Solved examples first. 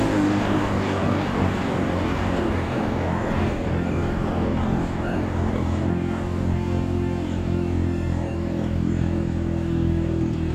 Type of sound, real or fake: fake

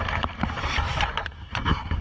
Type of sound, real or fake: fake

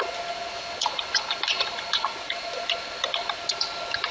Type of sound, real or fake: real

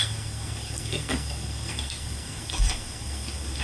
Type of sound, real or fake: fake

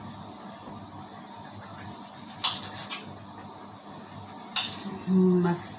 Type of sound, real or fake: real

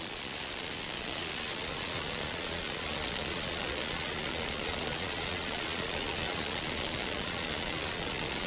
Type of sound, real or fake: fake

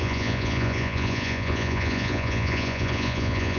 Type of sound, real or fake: fake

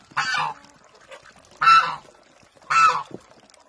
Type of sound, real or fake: real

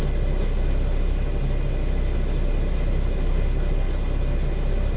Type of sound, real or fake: real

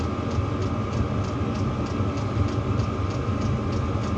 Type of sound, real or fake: real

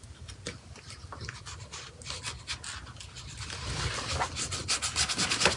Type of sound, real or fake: real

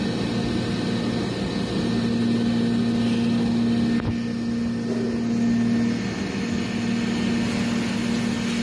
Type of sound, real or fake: real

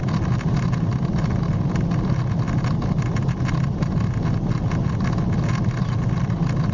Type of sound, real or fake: real